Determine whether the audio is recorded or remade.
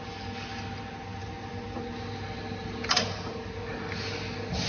recorded